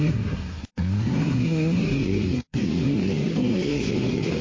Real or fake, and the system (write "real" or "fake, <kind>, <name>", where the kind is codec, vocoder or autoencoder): fake, codec, SNAC